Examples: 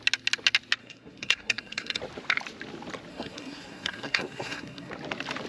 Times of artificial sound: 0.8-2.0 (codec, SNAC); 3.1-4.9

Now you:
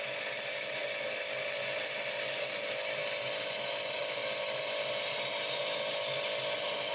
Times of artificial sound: none